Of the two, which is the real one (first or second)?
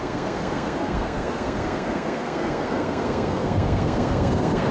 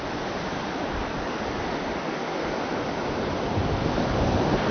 second